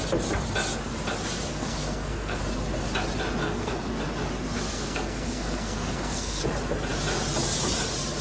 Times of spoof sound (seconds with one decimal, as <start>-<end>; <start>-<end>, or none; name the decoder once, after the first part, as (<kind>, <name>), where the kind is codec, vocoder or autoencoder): 1.5-2.4 (codec, SNAC); 3.4-3.9; 4.7-6.4